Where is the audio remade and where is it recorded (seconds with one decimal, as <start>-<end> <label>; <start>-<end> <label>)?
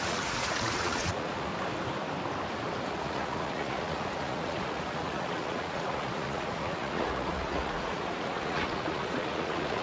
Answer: 0.0-1.5 remade; 1.5-2.9 recorded; 2.9-9.8 remade